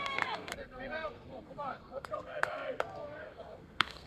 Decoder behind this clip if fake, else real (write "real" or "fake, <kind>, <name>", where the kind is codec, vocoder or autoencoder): fake, codec, SNAC